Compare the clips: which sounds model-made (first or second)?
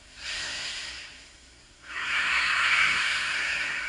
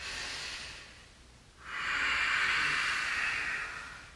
first